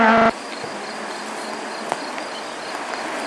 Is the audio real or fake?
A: real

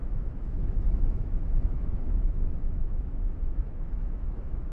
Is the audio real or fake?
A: fake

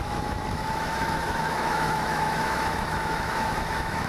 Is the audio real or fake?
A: fake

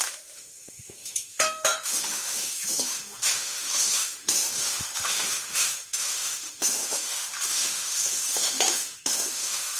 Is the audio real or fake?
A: fake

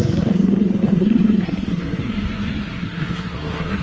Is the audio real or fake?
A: fake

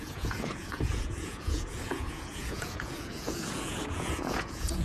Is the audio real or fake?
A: fake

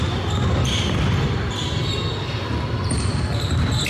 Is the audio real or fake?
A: real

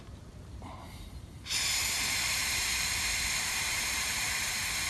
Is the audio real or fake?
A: fake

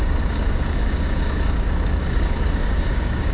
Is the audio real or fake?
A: fake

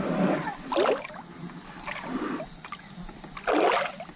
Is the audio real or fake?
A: real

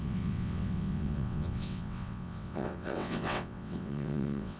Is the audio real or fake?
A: fake